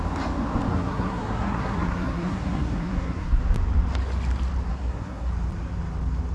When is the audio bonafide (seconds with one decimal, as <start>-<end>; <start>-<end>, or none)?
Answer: 0.0-0.7; 3.4-4.7; 5.3-6.3